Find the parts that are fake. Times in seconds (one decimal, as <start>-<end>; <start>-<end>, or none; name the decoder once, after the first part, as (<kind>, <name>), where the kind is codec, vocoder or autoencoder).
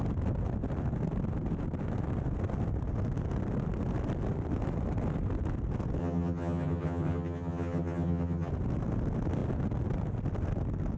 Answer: 6.0-8.5 (vocoder, HiFi-GAN)